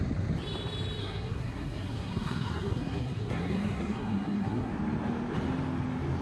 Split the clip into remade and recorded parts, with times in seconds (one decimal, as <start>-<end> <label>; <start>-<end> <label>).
0.0-1.0 recorded; 1.0-4.7 remade; 4.7-6.2 recorded

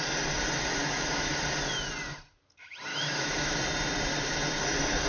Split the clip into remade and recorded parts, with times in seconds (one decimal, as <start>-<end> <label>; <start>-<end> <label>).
0.0-0.8 recorded; 0.8-1.3 remade; 1.3-2.9 recorded; 2.9-3.6 remade; 3.6-5.1 recorded

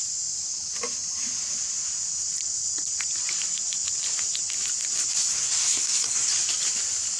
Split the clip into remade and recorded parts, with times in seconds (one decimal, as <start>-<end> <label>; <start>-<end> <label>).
0.0-5.3 recorded; 5.3-6.3 remade; 6.3-7.2 recorded

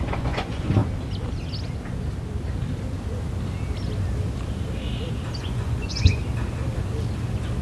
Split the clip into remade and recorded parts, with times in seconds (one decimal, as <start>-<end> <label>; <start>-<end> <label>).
0.0-0.8 remade; 0.8-5.4 recorded; 5.4-6.2 remade; 6.2-7.6 recorded

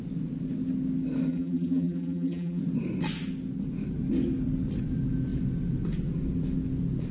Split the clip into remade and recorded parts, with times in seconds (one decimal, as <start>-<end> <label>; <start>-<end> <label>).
0.0-1.3 recorded; 1.3-2.6 remade; 2.6-7.1 recorded

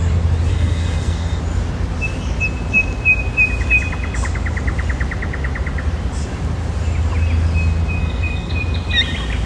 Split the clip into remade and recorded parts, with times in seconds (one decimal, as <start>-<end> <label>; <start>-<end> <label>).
0.0-0.5 recorded; 0.5-1.4 remade; 1.4-8.0 recorded; 8.0-8.5 remade; 8.5-9.5 recorded